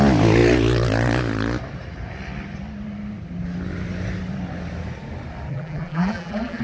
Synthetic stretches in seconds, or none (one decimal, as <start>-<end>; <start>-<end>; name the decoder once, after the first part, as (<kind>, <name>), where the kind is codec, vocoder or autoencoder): 5.5-6.6 (vocoder, BigVGAN v2)